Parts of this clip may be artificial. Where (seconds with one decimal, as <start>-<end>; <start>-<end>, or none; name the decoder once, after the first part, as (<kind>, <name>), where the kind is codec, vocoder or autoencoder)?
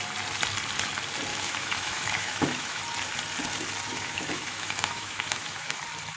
1.3-2.8 (autoencoder, DAC-VAE); 3.9-5.8